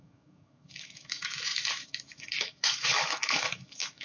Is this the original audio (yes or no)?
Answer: no